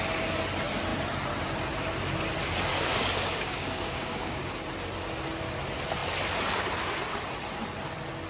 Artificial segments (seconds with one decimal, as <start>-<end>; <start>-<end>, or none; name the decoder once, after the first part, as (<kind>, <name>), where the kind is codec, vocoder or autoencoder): 2.7-4.5 (codec, DAC)